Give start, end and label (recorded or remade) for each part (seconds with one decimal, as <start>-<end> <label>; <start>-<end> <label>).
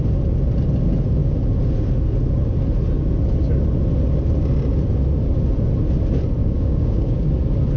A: 0.0-6.4 recorded; 6.4-7.3 remade; 7.3-7.8 recorded